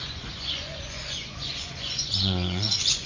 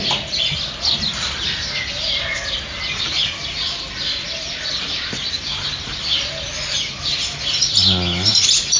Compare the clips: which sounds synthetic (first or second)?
first